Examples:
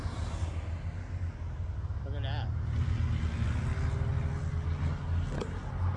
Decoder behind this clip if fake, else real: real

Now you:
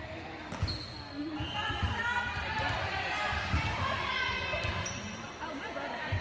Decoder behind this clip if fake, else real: real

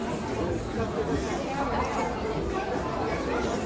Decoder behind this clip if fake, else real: real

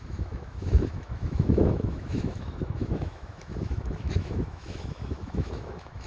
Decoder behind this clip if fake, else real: fake, autoencoder, DAC-VAE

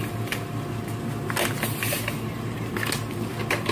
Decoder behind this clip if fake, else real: real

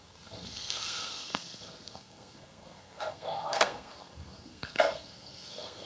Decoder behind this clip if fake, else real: fake, codec, SNAC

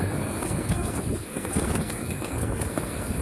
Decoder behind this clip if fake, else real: fake, codec, SNAC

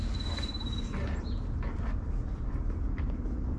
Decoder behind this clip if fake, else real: real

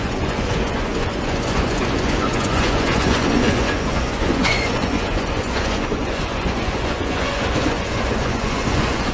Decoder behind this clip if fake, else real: fake, vocoder, Vocos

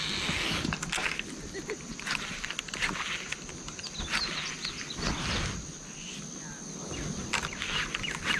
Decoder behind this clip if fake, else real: real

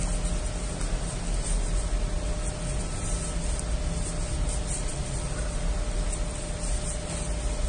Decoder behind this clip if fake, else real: real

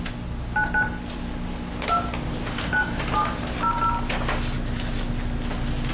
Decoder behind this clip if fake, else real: real